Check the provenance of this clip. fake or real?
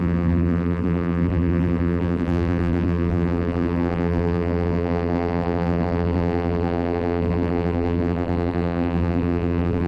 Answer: fake